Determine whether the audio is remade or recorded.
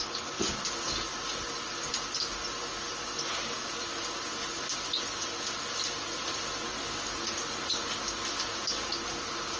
recorded